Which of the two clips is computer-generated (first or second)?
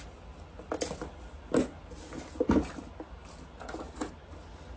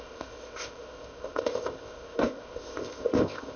second